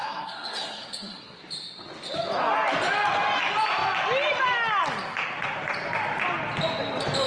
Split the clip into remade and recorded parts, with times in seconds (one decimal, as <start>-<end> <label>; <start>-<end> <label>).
0.0-1.4 remade; 1.4-7.3 recorded